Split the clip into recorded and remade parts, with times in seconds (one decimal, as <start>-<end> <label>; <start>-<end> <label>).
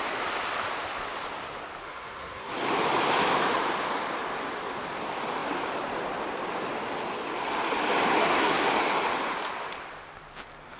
0.0-1.8 recorded; 1.8-2.5 remade; 2.5-8.1 recorded; 8.1-8.7 remade; 8.7-10.8 recorded